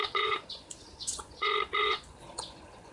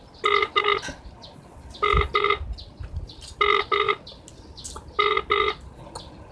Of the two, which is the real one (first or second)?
second